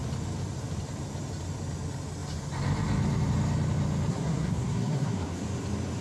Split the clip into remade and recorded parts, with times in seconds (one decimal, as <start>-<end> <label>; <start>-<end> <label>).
0.0-4.1 recorded; 4.1-5.4 remade; 5.4-6.0 recorded